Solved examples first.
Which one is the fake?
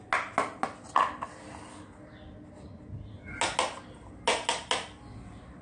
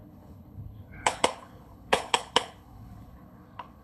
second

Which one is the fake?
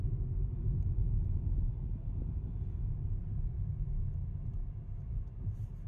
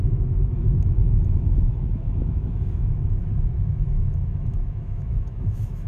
second